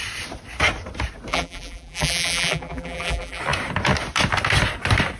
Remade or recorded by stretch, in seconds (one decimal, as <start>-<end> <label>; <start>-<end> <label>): 0.0-1.3 recorded; 1.3-3.4 remade; 3.4-5.2 recorded